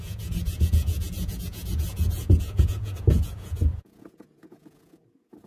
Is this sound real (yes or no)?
no